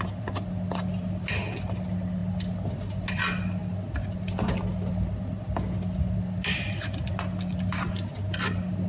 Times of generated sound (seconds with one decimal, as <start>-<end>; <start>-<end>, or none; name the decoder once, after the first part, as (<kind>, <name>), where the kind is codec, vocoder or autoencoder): none